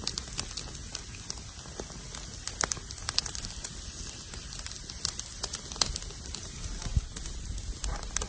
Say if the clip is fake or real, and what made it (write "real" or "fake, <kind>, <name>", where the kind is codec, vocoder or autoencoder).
real